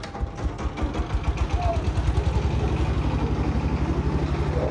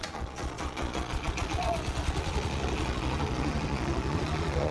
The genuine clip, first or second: first